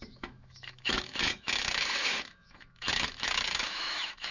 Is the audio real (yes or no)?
no